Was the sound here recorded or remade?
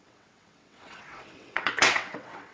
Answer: remade